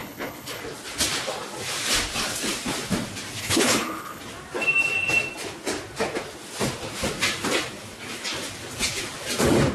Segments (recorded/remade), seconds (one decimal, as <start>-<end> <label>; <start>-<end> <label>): 0.0-0.6 remade; 0.6-3.4 recorded; 3.4-4.2 remade; 4.2-9.7 recorded